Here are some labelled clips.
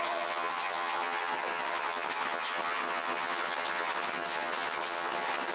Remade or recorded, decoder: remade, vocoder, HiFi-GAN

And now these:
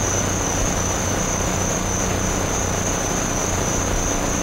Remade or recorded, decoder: recorded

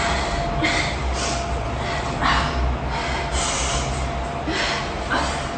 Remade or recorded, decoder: recorded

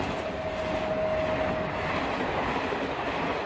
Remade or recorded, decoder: recorded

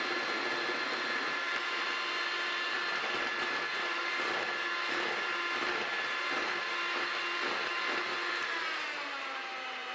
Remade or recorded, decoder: recorded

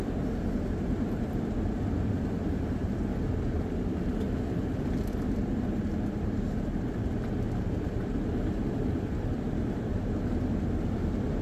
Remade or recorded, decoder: remade, vocoder, BigVGAN v2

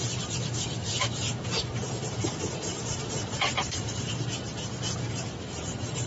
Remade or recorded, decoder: remade, vocoder, BigVGAN v2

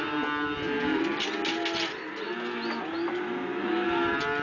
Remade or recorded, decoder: recorded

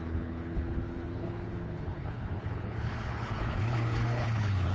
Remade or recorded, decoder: remade, codec, HILCodec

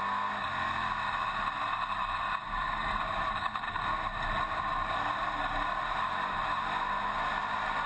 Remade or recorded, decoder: recorded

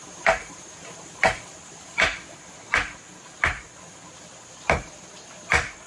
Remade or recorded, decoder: recorded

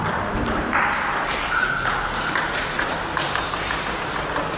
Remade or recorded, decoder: recorded